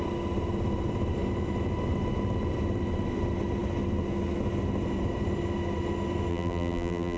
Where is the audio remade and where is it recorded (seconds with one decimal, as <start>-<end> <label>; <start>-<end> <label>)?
0.0-6.3 recorded; 6.3-7.2 remade